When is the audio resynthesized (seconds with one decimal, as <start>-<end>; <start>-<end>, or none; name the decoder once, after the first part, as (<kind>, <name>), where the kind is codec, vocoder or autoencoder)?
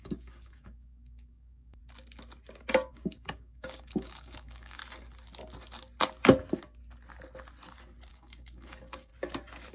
0.0-1.8 (codec, DAC); 2.9-4.8; 8.1-9.1